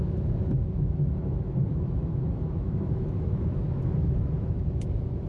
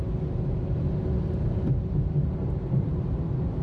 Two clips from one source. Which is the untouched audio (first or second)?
second